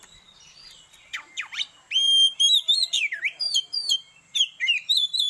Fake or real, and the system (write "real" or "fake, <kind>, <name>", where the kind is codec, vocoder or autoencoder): fake, vocoder, BigVGAN v2